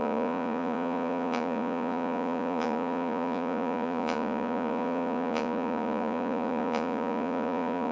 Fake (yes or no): yes